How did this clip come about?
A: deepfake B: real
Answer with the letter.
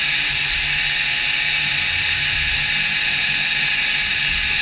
B